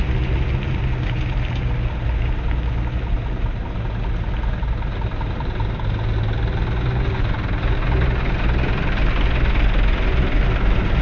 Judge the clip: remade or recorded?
recorded